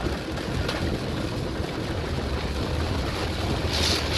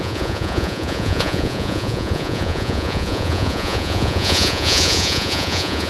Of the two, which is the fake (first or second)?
second